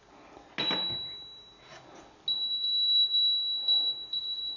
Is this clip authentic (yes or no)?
yes